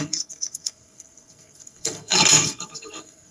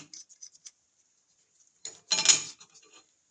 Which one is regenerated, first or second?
first